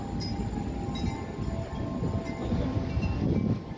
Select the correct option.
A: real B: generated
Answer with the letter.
A